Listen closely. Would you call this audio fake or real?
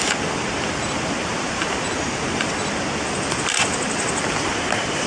real